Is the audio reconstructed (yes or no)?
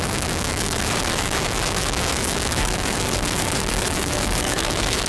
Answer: yes